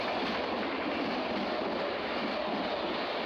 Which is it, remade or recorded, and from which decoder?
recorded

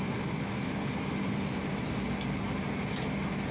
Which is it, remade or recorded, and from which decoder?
recorded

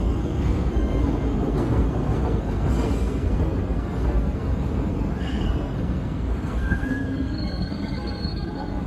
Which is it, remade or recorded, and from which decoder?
remade, codec, SNAC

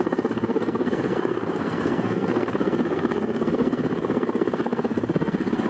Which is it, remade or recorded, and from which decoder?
remade, codec, SNAC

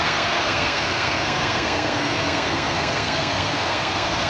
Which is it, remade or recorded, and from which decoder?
remade, codec, SNAC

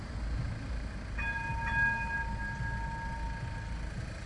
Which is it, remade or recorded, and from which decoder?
recorded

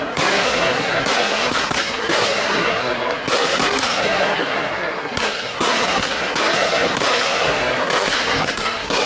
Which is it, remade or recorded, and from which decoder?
remade, codec, SNAC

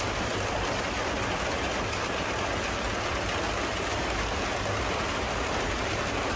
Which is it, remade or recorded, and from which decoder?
recorded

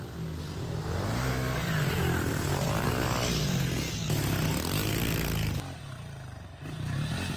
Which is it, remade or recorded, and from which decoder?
recorded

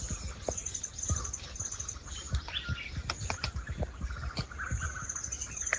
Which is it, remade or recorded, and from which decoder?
recorded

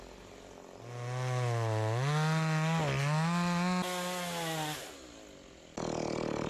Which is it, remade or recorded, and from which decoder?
recorded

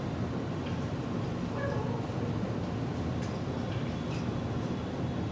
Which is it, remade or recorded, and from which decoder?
recorded